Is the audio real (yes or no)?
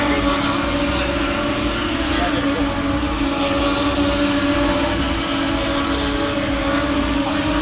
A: yes